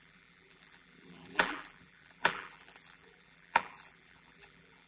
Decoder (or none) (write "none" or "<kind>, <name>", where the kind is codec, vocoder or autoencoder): vocoder, BigVGAN v2